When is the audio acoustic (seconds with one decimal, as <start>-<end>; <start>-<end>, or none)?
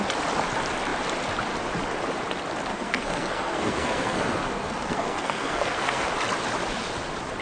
0.0-2.7; 6.1-7.4